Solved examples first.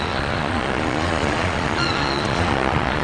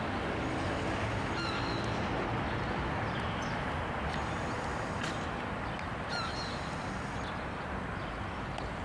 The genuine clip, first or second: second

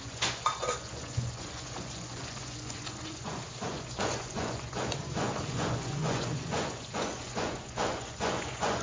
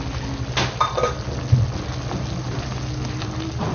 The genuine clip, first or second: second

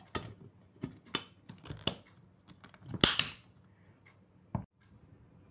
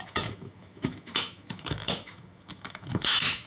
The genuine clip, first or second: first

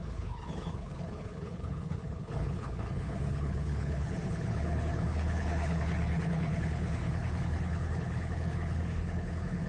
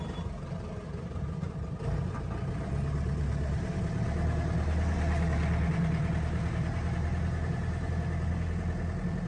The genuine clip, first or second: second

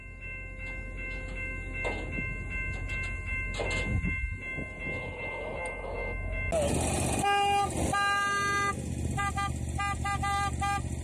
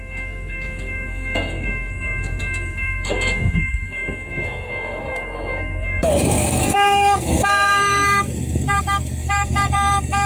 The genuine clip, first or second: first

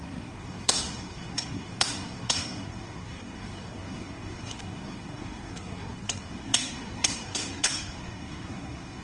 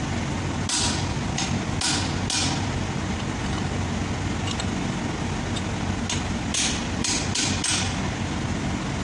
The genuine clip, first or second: second